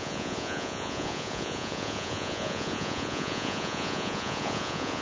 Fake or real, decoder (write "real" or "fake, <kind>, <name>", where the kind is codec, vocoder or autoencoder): fake, vocoder, Vocos